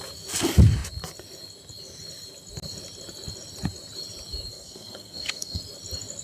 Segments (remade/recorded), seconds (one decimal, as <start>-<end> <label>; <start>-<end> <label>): 0.0-4.5 recorded; 4.5-5.6 remade; 5.6-6.2 recorded